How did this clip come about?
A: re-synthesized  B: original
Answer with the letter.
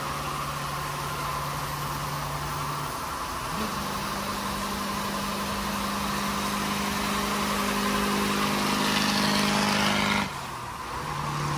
B